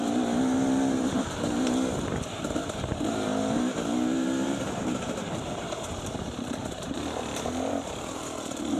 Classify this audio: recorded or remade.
remade